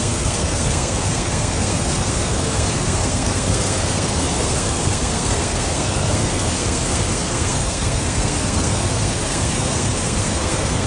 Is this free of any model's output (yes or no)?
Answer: no